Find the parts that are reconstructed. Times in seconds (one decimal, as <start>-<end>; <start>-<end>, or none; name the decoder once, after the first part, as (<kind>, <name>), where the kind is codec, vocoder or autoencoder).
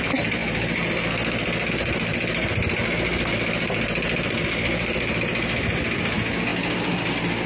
0.0-0.4 (vocoder, BigVGAN v2); 1.7-7.5